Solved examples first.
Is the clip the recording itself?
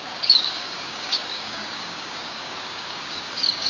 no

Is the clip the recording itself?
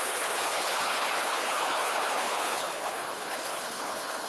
no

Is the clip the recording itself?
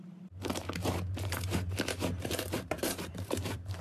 no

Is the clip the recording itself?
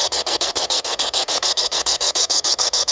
no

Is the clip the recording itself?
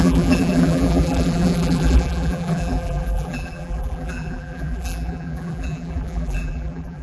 no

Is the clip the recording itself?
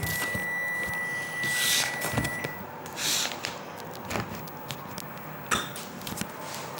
yes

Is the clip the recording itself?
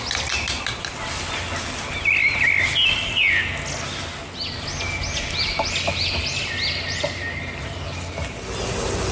yes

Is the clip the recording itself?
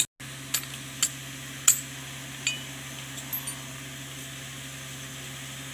yes